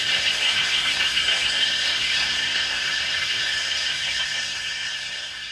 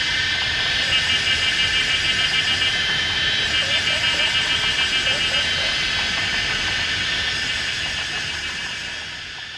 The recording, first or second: second